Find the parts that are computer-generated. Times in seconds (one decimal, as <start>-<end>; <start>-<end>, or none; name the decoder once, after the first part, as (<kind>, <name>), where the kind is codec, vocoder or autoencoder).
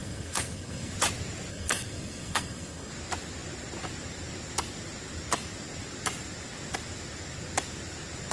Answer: 0.0-0.9 (codec, SNAC); 1.5-2.9